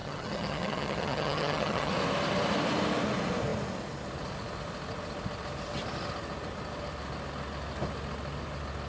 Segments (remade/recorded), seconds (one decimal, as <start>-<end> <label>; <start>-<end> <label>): 0.0-1.9 remade; 1.9-8.9 recorded